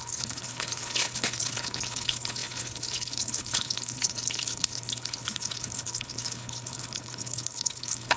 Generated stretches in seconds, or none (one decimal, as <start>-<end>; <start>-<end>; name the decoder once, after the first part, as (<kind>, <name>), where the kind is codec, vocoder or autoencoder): 0.0-8.2 (codec, HILCodec)